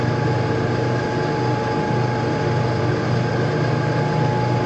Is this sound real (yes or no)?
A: yes